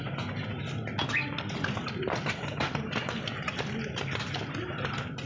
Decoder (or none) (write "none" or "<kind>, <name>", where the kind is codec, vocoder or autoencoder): none